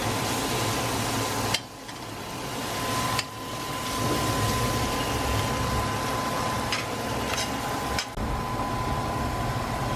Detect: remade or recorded recorded